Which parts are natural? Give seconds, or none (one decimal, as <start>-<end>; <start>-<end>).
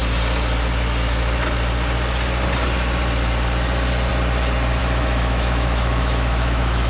0.0-4.8